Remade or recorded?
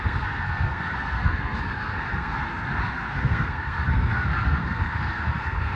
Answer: remade